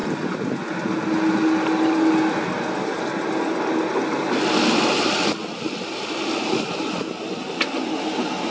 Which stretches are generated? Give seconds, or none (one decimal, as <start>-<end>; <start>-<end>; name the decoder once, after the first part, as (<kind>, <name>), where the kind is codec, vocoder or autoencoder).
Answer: none